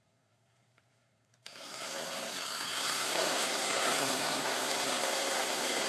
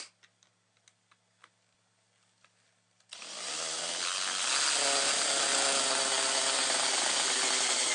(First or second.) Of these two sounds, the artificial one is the first